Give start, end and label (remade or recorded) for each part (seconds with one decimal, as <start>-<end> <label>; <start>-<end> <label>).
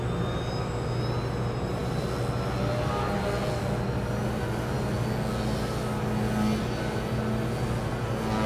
0.0-8.5 recorded